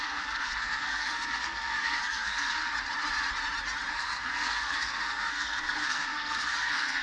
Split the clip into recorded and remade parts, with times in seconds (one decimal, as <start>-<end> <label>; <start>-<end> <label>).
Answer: 0.0-2.7 remade; 2.7-3.9 recorded; 3.9-7.0 remade